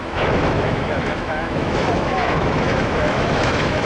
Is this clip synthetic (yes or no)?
yes